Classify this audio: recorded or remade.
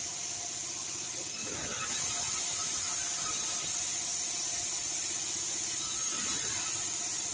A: recorded